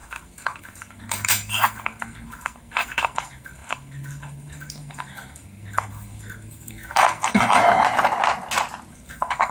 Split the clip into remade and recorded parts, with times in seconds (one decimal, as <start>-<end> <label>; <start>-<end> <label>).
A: 0.0-7.6 remade; 7.6-8.9 recorded; 8.9-9.5 remade